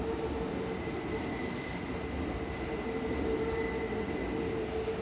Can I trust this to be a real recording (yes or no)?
yes